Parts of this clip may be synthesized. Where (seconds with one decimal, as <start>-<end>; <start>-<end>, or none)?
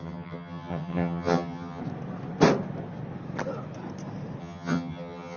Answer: 0.0-1.8; 4.4-5.4